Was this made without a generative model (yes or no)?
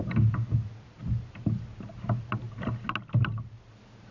yes